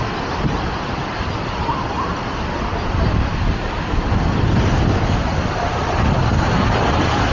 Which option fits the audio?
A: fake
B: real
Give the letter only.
B